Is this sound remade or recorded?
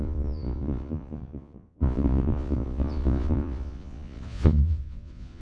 remade